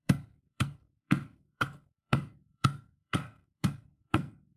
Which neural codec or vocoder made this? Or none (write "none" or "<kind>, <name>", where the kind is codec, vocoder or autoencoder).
codec, SNAC